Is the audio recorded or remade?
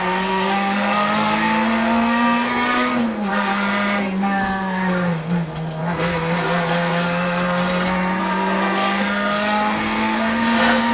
remade